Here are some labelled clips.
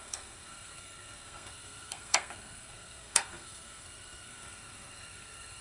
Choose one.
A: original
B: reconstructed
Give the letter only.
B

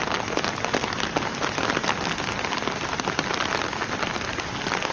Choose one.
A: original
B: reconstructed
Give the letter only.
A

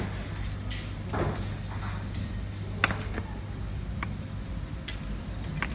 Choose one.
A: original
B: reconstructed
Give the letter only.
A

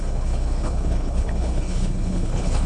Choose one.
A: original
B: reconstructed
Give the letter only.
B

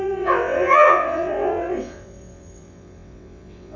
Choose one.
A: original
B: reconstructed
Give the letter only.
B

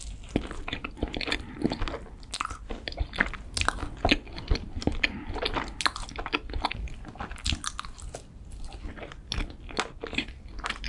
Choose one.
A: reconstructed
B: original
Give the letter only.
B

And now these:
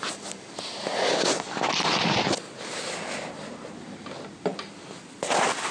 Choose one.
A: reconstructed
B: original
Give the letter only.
B